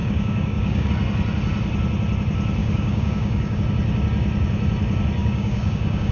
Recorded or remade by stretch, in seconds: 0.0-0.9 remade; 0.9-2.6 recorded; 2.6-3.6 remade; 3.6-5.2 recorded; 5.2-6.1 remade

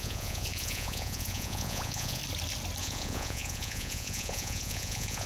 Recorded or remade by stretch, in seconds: 0.0-2.2 remade; 2.2-2.8 recorded; 2.8-5.3 remade

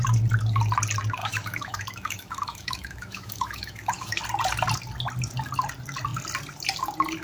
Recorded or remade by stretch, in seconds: 0.0-1.2 recorded; 1.2-4.2 remade; 4.2-7.2 recorded

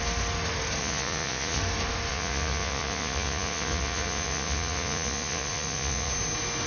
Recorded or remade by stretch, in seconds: 0.0-0.8 recorded; 0.8-1.6 remade; 1.6-2.1 recorded; 2.1-6.1 remade; 6.1-6.7 recorded

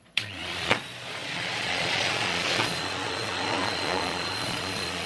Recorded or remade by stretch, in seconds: 0.0-5.1 remade